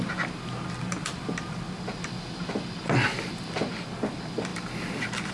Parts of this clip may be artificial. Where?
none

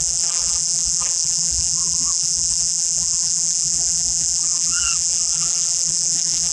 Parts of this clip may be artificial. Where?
0.0-6.5 (vocoder, BigVGAN v2)

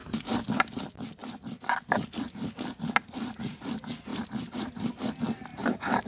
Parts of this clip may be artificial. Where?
4.1-5.1 (vocoder, BigVGAN v2)

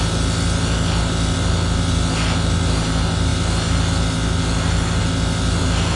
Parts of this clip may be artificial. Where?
none